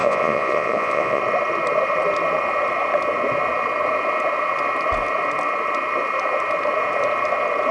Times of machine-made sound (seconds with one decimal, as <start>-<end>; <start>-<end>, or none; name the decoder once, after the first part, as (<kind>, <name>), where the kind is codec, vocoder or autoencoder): 0.0-1.2 (vocoder, Vocos)

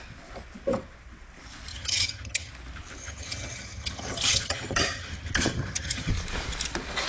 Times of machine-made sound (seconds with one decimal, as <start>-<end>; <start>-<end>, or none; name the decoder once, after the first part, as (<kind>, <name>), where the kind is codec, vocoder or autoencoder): 1.7-2.5 (vocoder, HiFi-GAN); 3.0-6.1